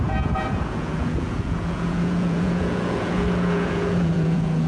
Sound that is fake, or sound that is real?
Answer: fake